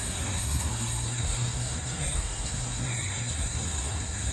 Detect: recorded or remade remade